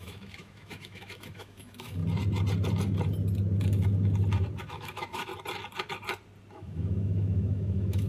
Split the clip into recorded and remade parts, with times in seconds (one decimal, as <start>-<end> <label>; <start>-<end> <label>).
0.0-2.0 remade; 2.0-4.7 recorded; 4.7-5.3 remade; 5.3-6.5 recorded; 6.5-8.1 remade